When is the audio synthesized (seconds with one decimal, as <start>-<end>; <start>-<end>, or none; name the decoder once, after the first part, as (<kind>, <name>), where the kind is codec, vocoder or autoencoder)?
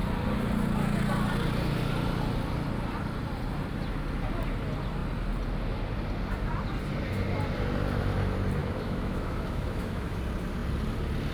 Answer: 8.6-10.2 (autoencoder, DAC-VAE)